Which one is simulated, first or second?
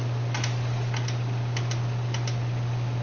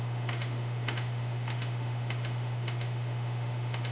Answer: second